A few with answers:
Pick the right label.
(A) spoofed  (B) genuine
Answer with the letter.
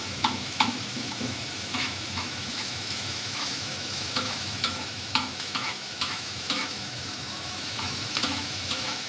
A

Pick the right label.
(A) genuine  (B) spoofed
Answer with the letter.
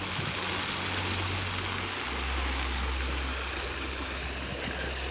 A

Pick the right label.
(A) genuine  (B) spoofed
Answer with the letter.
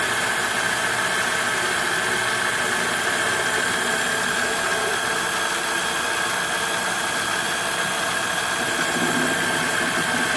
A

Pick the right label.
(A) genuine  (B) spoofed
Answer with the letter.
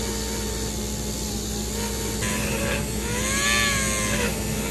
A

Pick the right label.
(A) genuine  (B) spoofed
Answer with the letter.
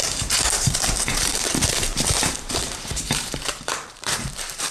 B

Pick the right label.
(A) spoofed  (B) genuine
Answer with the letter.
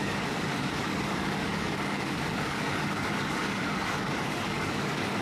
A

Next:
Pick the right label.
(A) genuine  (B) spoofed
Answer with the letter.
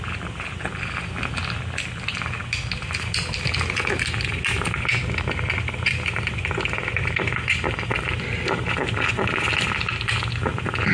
A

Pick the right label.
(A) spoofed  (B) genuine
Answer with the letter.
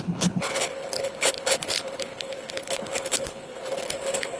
A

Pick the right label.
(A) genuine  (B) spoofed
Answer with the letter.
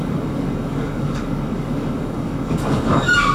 B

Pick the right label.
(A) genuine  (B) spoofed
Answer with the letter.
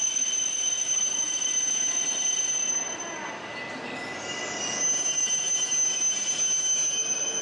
A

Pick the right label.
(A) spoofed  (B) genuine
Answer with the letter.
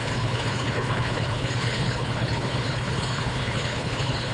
A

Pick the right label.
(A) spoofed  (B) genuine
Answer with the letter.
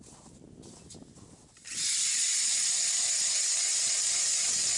B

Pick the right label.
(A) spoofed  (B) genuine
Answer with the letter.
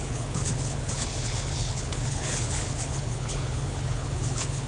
A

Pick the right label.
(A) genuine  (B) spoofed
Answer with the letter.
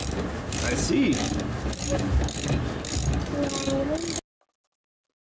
A